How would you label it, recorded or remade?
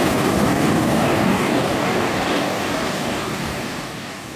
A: remade